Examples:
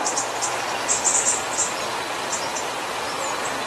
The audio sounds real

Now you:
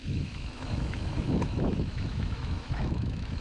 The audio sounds fake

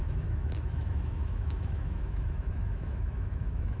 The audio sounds fake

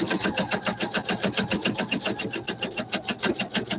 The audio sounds real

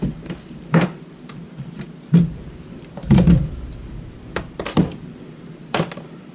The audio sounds fake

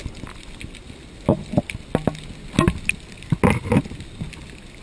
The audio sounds real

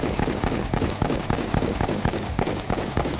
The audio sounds fake